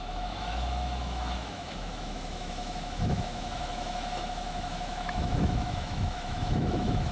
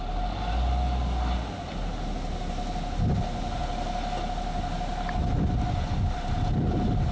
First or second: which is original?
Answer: second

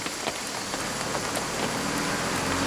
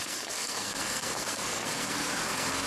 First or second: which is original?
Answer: first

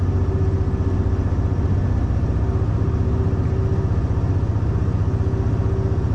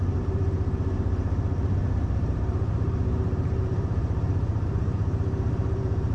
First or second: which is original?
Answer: first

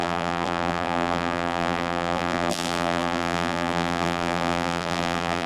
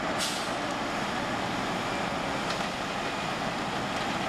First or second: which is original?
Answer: second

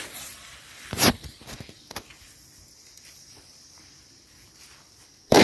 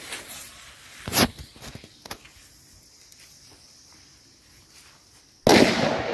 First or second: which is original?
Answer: second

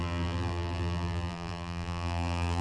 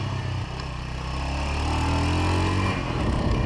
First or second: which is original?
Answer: second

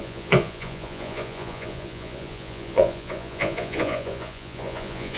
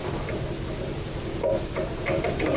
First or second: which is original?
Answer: second